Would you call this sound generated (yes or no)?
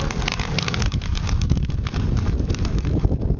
yes